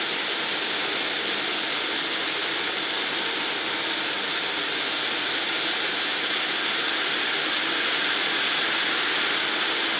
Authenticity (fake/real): real